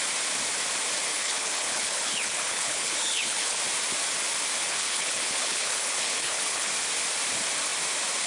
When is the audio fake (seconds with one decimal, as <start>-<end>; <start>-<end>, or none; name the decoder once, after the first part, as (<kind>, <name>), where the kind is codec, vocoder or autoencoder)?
1.1-3.6 (codec, HILCodec); 4.7-6.7